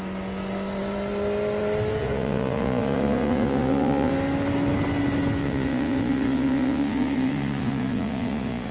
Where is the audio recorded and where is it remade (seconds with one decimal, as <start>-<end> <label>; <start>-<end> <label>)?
0.0-2.0 recorded; 2.0-4.1 remade; 4.1-5.4 recorded; 5.4-8.7 remade